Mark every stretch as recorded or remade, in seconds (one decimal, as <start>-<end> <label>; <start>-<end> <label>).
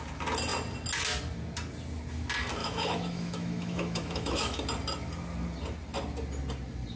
0.0-2.6 recorded; 2.6-4.6 remade; 4.6-7.0 recorded